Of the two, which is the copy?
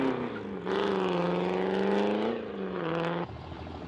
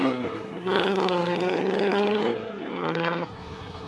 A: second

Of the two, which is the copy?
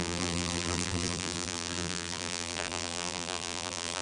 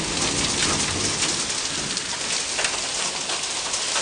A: first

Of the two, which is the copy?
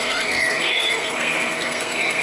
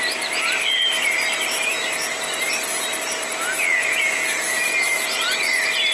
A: first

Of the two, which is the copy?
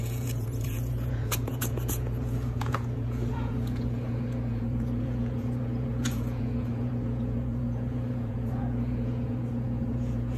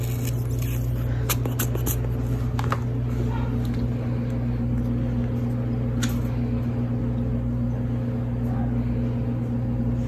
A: first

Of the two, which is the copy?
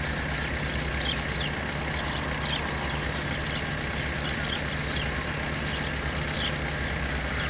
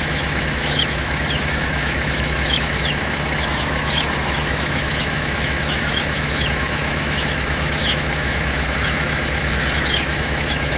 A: second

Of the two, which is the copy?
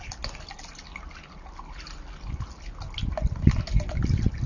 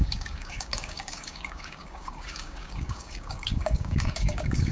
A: second